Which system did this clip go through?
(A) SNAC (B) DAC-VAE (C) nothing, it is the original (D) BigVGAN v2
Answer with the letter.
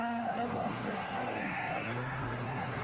A